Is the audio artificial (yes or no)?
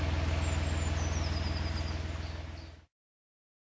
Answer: no